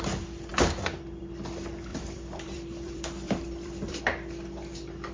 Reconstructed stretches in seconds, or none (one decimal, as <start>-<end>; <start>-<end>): 1.9-4.0